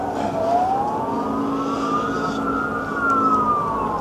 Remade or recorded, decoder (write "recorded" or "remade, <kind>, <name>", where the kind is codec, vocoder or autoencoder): recorded